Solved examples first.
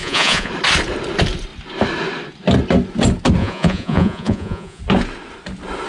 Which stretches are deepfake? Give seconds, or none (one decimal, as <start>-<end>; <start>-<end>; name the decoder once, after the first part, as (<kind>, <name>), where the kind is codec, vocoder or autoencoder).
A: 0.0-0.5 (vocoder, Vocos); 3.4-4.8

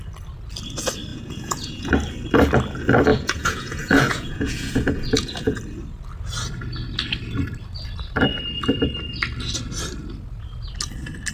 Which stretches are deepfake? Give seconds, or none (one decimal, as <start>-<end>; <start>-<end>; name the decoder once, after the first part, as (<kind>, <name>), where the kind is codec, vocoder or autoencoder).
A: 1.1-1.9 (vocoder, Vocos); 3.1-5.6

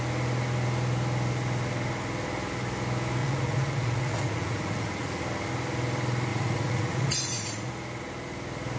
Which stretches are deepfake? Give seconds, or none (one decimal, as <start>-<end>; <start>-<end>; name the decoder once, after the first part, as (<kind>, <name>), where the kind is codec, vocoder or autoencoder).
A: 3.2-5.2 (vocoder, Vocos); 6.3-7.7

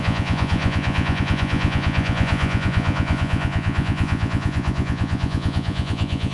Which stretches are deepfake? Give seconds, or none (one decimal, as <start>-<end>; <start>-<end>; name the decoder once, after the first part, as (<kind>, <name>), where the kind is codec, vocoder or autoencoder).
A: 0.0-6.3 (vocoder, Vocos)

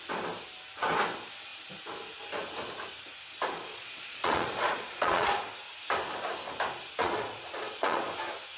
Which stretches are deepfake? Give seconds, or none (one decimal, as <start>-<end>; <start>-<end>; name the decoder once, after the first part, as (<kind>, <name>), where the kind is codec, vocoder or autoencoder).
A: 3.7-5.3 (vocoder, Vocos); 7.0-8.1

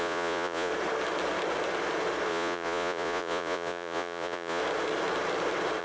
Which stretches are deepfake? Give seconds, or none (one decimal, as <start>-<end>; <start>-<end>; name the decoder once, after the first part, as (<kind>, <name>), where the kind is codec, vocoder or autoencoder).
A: 0.0-0.7 (vocoder, Vocos); 2.3-4.6